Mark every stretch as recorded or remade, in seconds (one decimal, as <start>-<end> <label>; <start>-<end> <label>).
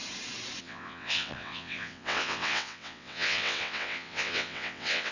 0.0-0.6 recorded; 0.6-5.1 remade